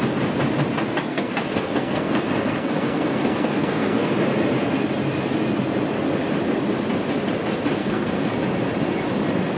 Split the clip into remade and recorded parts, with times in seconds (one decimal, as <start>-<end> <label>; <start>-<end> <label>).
0.0-1.1 recorded; 1.1-4.1 remade; 4.1-7.8 recorded; 7.8-8.3 remade; 8.3-9.6 recorded